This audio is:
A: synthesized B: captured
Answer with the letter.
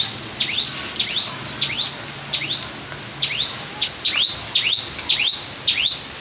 B